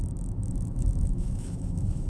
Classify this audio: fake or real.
fake